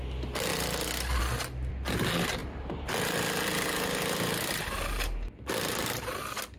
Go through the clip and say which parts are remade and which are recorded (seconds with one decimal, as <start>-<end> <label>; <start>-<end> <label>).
0.0-2.4 recorded; 2.4-6.0 remade; 6.0-6.6 recorded